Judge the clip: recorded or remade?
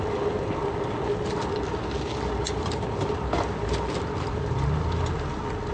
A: recorded